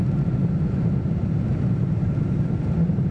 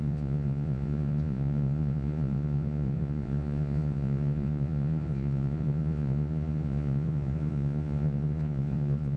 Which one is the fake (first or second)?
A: second